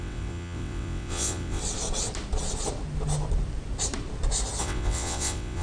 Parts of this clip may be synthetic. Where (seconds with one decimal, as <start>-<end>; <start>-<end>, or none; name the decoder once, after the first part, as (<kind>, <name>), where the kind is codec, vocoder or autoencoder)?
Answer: 0.0-1.6 (vocoder, WaveNeXt); 4.6-5.6